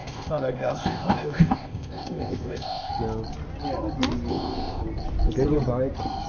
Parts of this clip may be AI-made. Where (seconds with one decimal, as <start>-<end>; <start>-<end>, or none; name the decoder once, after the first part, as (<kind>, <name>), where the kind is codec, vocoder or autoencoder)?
0.0-2.9 (codec, ZipCodec); 4.3-4.8